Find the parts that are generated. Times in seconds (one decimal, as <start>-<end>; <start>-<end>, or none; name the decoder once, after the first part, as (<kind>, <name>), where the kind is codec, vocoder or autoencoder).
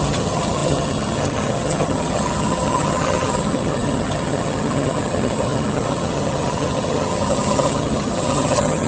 0.0-8.9 (vocoder, HiFi-GAN)